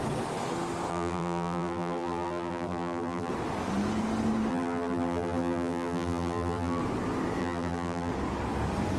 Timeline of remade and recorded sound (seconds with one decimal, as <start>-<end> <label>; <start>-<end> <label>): 0.0-0.9 recorded; 0.9-3.3 remade; 3.3-4.5 recorded; 4.5-6.8 remade; 6.8-7.4 recorded; 7.4-8.1 remade; 8.1-9.0 recorded